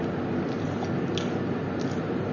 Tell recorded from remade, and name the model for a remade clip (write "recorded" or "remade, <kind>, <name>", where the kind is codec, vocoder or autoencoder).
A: recorded